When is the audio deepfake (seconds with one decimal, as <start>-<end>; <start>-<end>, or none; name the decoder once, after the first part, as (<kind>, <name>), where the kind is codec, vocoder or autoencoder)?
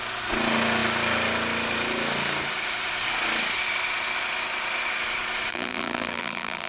5.5-6.7 (vocoder, BigVGAN v2)